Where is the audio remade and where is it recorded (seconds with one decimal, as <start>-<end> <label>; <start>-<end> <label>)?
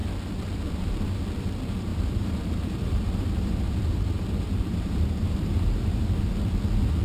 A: 0.0-1.9 recorded; 1.9-6.1 remade; 6.1-7.0 recorded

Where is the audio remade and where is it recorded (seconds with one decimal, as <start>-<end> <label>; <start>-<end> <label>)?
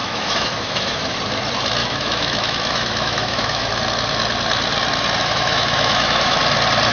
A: 0.0-1.2 remade; 1.2-1.8 recorded; 1.8-3.7 remade; 3.7-5.2 recorded; 5.2-6.4 remade; 6.4-6.9 recorded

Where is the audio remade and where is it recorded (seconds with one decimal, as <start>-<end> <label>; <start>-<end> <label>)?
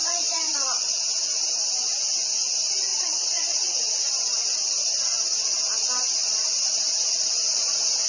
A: 0.0-1.5 remade; 1.5-2.9 recorded; 2.9-4.0 remade; 4.0-8.1 recorded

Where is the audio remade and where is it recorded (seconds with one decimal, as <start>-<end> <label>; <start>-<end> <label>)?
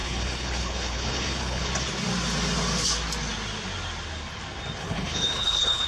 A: 0.0-1.7 remade; 1.7-4.8 recorded; 4.8-5.9 remade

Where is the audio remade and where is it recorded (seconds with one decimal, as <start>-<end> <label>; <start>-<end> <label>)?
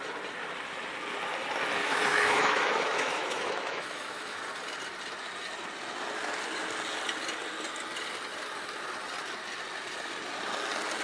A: 0.0-1.8 recorded; 1.8-4.4 remade; 4.4-11.0 recorded